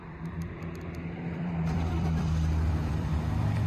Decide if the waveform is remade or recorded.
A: remade